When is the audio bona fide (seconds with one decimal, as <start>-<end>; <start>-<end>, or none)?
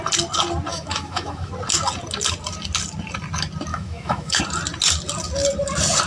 0.0-0.7; 1.5-3.7; 4.4-6.1